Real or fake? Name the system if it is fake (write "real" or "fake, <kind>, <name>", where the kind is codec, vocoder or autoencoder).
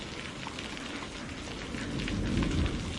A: real